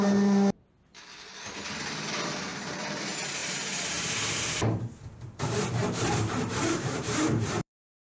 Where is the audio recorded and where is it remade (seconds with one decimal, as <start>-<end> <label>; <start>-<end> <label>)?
0.0-2.5 recorded; 2.5-3.0 remade; 3.0-3.4 recorded; 3.4-8.2 remade